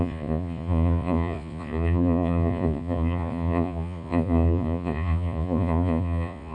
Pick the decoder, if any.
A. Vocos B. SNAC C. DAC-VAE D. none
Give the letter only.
A